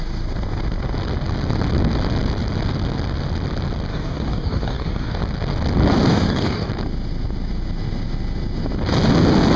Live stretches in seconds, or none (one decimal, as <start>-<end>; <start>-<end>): 0.0-3.9; 5.2-6.1; 6.7-9.6